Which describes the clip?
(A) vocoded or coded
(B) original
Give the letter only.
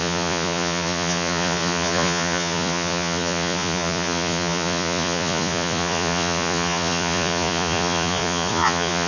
A